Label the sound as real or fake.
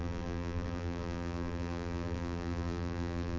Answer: fake